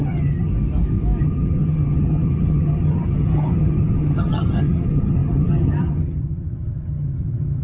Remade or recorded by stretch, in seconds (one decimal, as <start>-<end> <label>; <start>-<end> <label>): 0.0-0.5 remade; 0.5-1.2 recorded; 1.2-7.6 remade

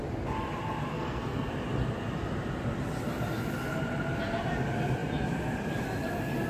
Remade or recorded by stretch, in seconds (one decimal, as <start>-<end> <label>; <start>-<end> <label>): 0.0-0.9 recorded; 0.9-1.5 remade; 1.5-6.5 recorded

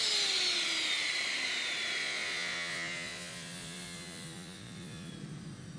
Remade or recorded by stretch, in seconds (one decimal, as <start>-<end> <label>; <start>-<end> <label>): 0.0-2.0 recorded; 2.0-5.1 remade; 5.1-5.8 recorded

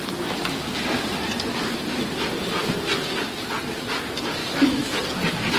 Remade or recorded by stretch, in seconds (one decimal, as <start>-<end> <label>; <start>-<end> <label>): 0.0-4.4 recorded; 4.4-5.0 remade; 5.0-5.6 recorded

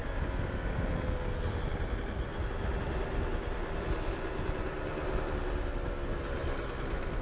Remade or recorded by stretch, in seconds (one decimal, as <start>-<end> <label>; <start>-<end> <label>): 0.0-2.3 recorded; 2.3-5.3 remade; 5.3-7.2 recorded